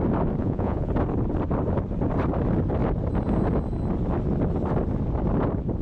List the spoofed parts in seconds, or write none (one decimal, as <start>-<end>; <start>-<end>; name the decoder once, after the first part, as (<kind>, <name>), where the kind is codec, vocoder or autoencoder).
0.4-0.9 (vocoder, Vocos)